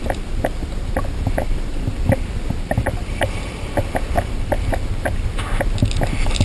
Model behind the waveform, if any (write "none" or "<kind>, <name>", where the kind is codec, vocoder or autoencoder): none